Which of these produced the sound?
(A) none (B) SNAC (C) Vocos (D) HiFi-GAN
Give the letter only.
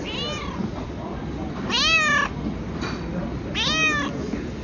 A